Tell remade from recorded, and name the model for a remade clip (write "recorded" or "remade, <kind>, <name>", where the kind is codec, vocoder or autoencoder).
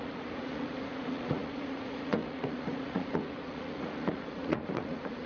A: remade, vocoder, Vocos